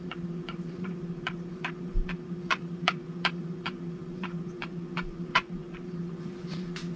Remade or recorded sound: remade